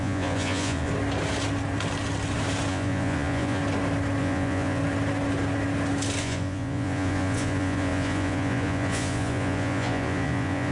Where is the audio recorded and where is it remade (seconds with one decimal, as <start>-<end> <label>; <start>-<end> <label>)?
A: 0.0-0.9 remade; 0.9-2.7 recorded; 2.7-3.6 remade; 3.6-4.2 recorded; 4.2-4.8 remade; 4.8-6.2 recorded; 6.2-10.7 remade